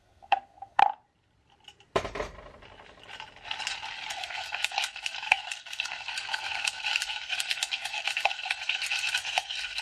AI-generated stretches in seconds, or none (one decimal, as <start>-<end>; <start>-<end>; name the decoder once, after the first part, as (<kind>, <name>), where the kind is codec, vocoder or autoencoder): 0.0-0.8 (codec, SNAC); 4.1-9.8